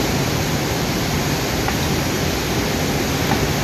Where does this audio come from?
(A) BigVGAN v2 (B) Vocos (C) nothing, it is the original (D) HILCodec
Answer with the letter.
C